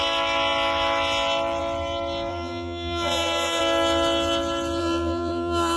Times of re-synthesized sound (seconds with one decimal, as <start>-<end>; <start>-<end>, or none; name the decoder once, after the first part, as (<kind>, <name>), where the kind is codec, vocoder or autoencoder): 2.3-3.6 (vocoder, BigVGAN v2); 4.8-5.8